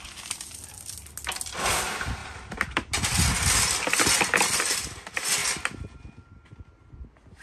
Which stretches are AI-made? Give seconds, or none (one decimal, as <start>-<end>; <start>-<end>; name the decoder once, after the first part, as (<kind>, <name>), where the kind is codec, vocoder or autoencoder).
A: 2.2-2.9 (vocoder, BigVGAN v2)